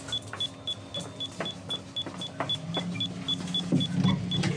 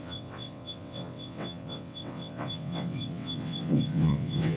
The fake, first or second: second